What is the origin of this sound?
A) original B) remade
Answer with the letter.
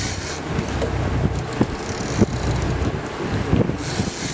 A